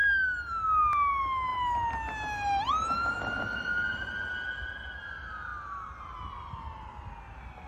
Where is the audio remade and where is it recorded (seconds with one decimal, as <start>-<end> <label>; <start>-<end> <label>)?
0.0-7.7 recorded